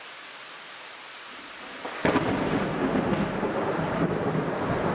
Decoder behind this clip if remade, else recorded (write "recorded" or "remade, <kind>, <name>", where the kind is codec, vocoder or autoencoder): recorded